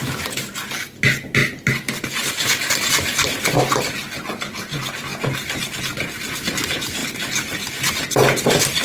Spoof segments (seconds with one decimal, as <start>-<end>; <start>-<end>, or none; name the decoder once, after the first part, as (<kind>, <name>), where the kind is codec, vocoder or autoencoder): none